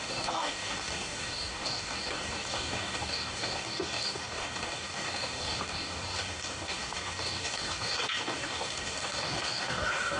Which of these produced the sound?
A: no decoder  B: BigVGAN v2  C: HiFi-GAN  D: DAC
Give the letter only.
D